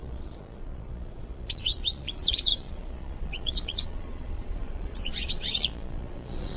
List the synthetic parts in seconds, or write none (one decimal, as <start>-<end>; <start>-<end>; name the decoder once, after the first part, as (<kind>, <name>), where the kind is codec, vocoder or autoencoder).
0.0-6.6 (vocoder, Vocos)